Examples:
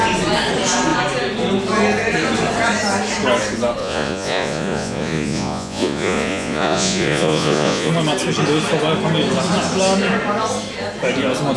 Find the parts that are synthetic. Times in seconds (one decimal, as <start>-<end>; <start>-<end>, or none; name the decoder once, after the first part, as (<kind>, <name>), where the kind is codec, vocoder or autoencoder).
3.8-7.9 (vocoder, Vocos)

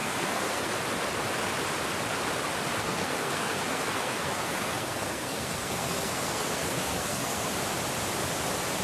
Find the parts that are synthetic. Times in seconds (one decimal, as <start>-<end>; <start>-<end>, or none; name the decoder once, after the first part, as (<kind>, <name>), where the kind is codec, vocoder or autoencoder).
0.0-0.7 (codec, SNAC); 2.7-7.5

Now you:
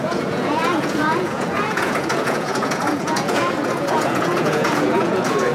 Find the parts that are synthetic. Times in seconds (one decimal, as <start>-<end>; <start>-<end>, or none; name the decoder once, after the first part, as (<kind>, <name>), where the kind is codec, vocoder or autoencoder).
0.0-5.5 (vocoder, Vocos)

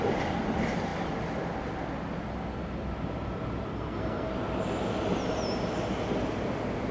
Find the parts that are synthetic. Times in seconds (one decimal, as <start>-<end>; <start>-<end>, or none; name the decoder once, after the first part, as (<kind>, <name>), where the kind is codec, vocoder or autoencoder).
3.7-4.3 (codec, SNAC)

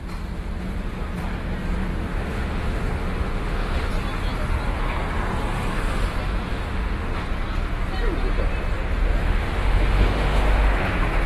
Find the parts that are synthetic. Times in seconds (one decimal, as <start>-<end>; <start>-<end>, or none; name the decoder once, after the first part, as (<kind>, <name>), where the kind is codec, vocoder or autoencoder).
2.1-3.9 (autoencoder, DAC-VAE); 6.5-7.1; 9.2-10.8

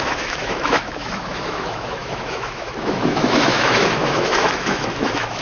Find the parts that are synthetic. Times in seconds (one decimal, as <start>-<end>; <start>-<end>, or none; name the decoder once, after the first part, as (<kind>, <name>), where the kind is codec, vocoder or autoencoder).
0.0-5.4 (autoencoder, DAC-VAE)